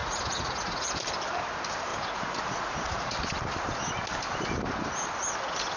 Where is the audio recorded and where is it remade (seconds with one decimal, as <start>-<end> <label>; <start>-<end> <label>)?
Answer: 0.0-0.9 remade; 0.9-1.9 recorded; 1.9-3.1 remade; 3.1-5.8 recorded